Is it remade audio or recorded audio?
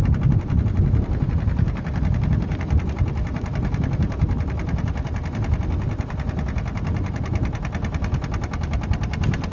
recorded